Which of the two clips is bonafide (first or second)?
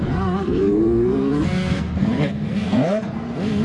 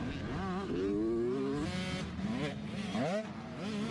second